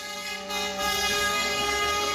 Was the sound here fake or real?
fake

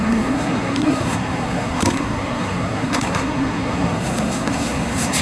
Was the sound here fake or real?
fake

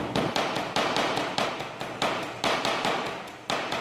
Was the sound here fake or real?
real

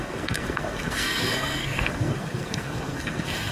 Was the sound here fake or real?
fake